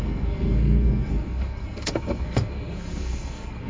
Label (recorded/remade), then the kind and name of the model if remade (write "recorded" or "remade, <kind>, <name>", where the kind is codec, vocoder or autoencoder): remade, codec, SNAC